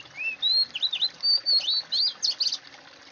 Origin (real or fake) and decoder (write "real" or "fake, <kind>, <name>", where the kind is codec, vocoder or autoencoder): real